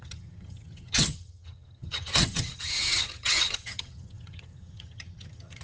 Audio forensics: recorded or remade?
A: remade